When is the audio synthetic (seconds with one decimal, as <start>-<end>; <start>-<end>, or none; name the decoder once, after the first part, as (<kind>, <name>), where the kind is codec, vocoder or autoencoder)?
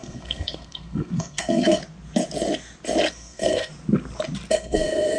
0.0-1.8 (codec, SNAC); 3.1-3.7; 4.5-5.2